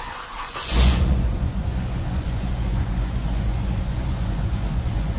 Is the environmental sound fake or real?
fake